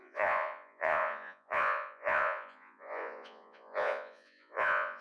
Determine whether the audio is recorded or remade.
remade